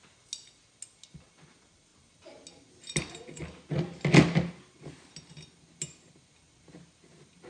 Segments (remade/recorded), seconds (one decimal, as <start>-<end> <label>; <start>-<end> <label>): 0.0-7.5 recorded